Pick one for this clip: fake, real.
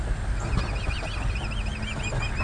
real